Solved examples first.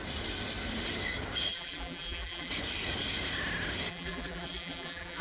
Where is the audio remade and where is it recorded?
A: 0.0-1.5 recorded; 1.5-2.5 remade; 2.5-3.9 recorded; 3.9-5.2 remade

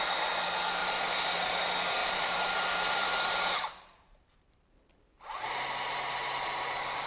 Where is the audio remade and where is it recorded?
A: 0.0-0.8 recorded; 0.8-1.6 remade; 1.6-2.0 recorded; 2.0-5.3 remade; 5.3-7.1 recorded